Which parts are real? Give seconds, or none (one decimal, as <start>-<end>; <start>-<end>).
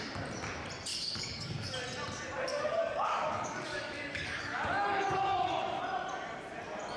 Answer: 0.0-0.9; 1.7-2.5; 5.8-7.0